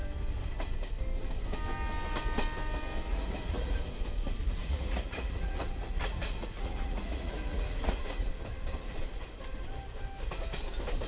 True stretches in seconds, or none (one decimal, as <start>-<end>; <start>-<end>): 0.0-3.1; 3.9-4.6; 8.3-11.1